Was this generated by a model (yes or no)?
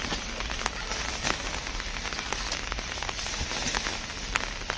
no